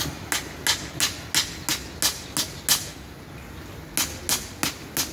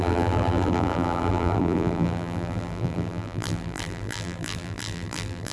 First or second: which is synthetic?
second